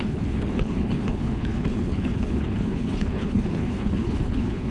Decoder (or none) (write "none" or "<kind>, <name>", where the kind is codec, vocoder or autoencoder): codec, HILCodec